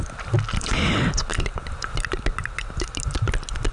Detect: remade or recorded recorded